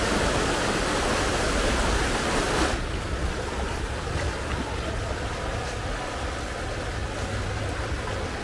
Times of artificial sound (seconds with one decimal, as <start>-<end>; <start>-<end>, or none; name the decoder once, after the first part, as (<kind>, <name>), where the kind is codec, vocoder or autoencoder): 1.3-2.4 (vocoder, BigVGAN v2); 7.0-7.8